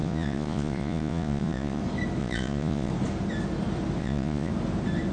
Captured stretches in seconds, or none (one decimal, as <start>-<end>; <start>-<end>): 1.8-2.2; 2.9-4.0; 4.5-5.1